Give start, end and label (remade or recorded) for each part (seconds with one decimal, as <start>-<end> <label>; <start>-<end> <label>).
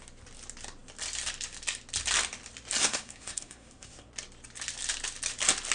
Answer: 0.0-2.8 recorded; 2.8-4.1 remade; 4.1-5.7 recorded